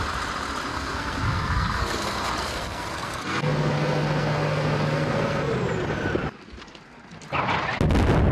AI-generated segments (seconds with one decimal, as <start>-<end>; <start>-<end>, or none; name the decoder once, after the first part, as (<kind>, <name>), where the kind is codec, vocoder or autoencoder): 0.7-5.5 (codec, SNAC)